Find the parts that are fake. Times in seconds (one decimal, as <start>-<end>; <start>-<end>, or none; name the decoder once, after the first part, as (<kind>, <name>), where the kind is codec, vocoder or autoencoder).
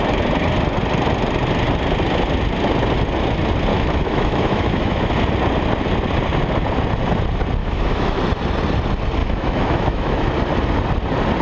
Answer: 3.7-5.1 (autoencoder, DAC-VAE); 7.6-8.2; 9.2-10.3